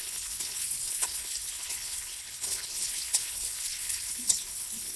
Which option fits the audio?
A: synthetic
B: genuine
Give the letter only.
A